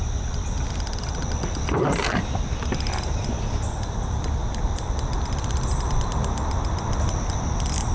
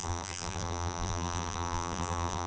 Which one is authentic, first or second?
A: first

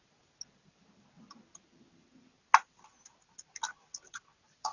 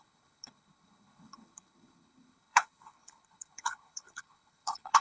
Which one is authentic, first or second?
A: first